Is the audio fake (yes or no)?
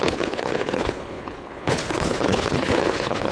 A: yes